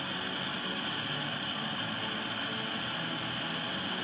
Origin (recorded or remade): recorded